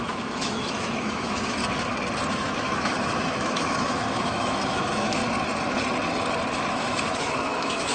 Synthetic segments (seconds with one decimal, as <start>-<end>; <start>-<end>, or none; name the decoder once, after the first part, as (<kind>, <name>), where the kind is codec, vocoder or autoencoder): 0.0-1.6 (autoencoder, DAC-VAE); 2.3-5.2; 6.7-7.9